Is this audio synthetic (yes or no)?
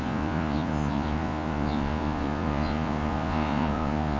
yes